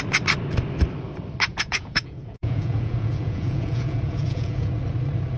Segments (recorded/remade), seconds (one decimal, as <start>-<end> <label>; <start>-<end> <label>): 0.0-1.5 recorded; 1.5-4.7 remade; 4.7-5.4 recorded